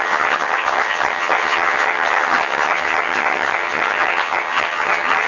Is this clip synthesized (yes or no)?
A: yes